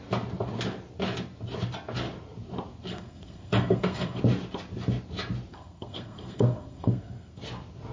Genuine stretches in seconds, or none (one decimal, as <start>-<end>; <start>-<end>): 0.0-2.9; 4.2-5.5; 7.4-7.9